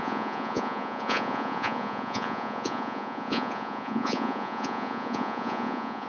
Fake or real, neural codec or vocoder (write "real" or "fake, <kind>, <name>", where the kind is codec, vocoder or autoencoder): fake, vocoder, Vocos